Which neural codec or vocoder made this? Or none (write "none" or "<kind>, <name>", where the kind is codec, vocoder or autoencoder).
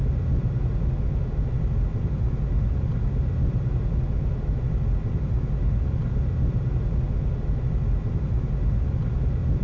none